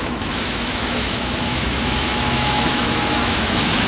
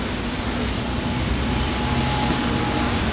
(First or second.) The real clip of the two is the second